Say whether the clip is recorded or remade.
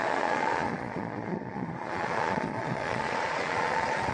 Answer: remade